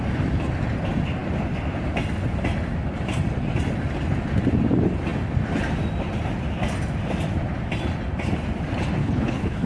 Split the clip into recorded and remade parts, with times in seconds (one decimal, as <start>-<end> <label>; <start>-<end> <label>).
0.0-9.0 recorded; 9.0-9.7 remade